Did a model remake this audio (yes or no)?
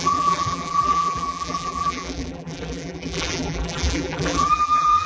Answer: yes